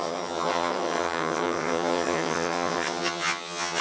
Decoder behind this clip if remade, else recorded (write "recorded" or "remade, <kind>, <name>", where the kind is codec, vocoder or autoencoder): remade, vocoder, HiFi-GAN